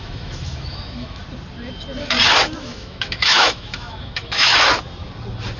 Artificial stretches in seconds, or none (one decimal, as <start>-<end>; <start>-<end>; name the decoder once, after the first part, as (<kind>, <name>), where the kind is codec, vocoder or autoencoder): 0.0-1.2 (autoencoder, DAC-VAE); 2.6-4.5